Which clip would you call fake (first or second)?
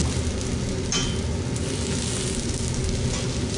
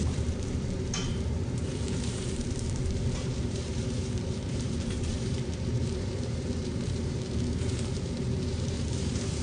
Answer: second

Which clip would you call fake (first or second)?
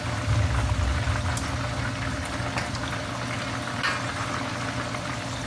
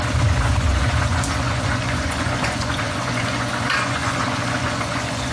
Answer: second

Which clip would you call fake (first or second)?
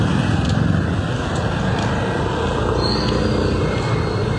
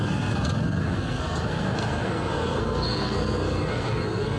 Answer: second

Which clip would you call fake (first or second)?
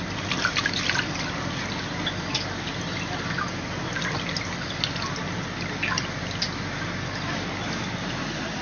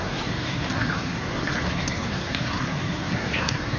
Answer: second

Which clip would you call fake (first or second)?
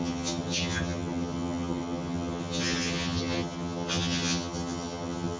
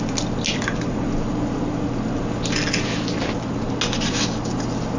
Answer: first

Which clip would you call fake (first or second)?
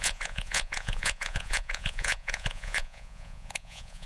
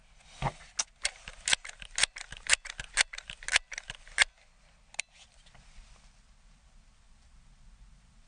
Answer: first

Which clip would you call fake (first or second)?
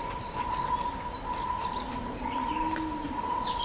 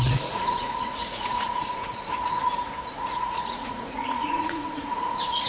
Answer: second